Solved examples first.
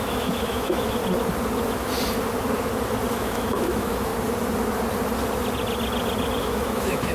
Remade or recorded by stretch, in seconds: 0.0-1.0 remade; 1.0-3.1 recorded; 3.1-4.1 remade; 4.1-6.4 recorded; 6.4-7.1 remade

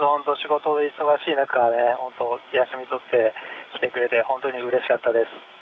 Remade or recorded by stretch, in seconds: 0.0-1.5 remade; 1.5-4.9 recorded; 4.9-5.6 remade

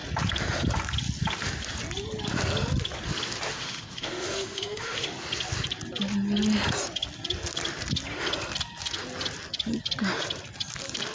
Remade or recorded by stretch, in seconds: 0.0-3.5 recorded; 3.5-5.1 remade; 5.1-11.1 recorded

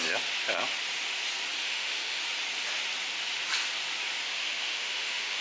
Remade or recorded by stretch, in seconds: 0.0-1.6 recorded; 1.6-2.2 remade; 2.2-4.2 recorded; 4.2-5.4 remade

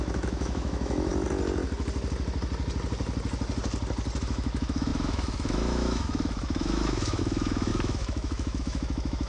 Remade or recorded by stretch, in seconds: 0.0-1.1 remade; 1.1-4.2 recorded; 4.2-9.3 remade